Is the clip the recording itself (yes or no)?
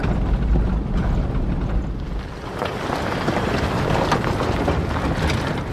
yes